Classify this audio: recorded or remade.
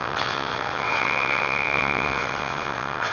remade